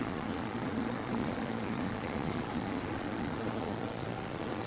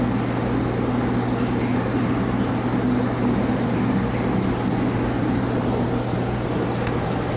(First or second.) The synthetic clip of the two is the first